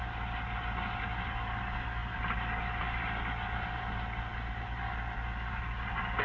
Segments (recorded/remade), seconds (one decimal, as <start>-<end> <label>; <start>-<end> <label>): 0.0-6.2 recorded

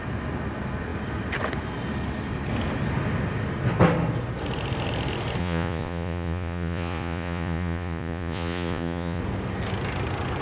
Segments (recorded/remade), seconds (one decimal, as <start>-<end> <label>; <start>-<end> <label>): 0.0-5.4 recorded; 5.4-9.2 remade; 9.2-10.4 recorded